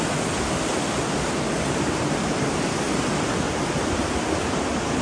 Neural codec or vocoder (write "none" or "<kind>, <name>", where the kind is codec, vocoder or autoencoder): none